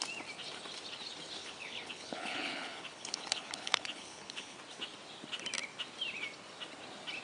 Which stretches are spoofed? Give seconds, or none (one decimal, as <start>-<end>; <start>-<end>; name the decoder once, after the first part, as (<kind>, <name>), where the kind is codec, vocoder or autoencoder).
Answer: 1.4-4.6 (codec, HILCodec)